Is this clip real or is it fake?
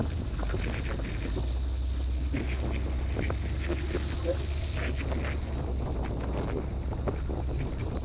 real